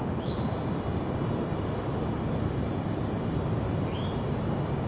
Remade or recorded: recorded